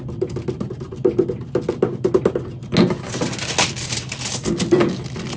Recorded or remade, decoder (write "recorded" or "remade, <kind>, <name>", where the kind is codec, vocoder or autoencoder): recorded